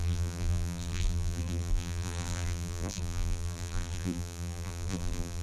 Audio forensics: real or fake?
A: fake